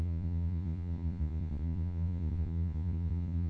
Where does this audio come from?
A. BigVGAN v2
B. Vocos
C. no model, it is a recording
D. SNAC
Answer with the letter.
B